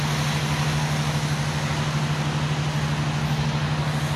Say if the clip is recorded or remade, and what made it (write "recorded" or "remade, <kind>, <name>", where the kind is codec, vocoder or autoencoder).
recorded